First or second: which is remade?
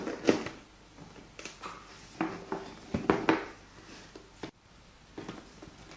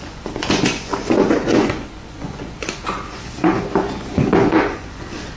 second